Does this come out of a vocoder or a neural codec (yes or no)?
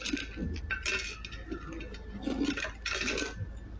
no